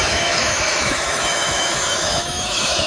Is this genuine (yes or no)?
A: no